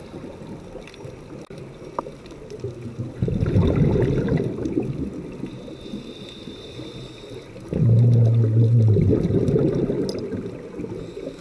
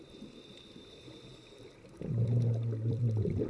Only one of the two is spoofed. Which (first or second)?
second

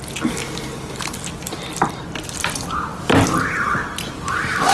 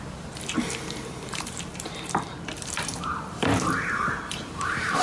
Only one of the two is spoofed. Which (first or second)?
second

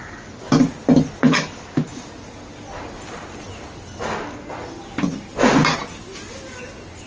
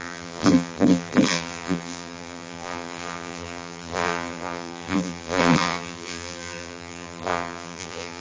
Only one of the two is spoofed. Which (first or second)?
second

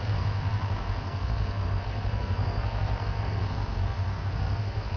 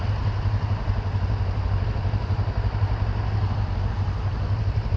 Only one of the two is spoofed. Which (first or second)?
first